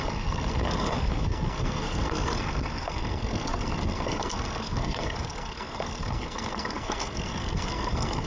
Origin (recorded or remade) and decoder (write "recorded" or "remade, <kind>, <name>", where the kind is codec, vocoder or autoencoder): remade, codec, SNAC